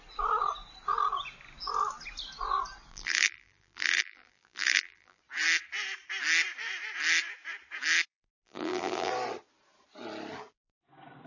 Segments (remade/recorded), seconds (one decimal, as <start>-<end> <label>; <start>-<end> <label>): 0.0-2.9 recorded; 2.9-5.2 remade; 5.2-8.1 recorded; 8.1-9.1 remade; 9.1-11.3 recorded